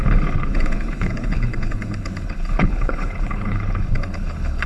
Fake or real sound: fake